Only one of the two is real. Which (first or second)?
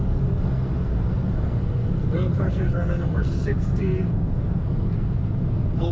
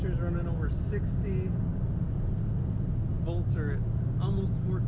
second